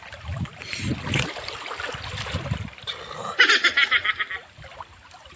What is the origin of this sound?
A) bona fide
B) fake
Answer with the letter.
B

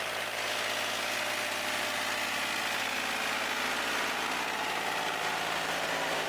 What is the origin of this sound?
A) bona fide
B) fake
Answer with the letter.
A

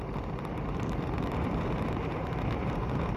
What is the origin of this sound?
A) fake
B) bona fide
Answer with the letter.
A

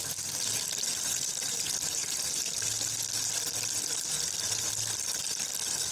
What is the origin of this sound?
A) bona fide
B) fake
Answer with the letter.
A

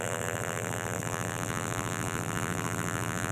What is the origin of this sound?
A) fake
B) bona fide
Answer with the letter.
A